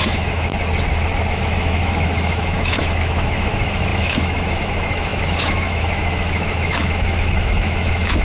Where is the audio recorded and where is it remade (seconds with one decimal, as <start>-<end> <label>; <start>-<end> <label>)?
0.0-0.5 remade; 0.5-1.3 recorded; 1.3-8.2 remade